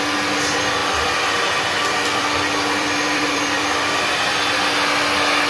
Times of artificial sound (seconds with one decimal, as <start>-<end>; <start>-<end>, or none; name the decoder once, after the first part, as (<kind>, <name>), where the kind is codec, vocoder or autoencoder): 0.8-4.0 (vocoder, BigVGAN v2)